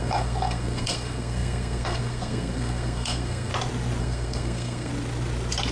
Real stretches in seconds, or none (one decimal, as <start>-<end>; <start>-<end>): 3.5-4.0; 4.9-5.7